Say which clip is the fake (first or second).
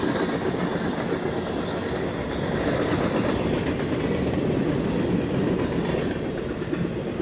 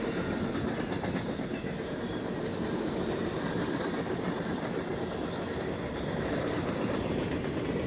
second